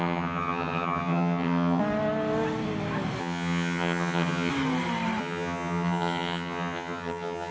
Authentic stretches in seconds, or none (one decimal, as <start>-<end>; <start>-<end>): 1.8-3.2; 4.5-5.2